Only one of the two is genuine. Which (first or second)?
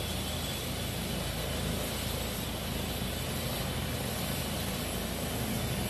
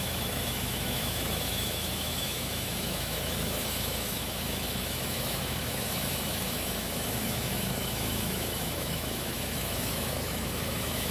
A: first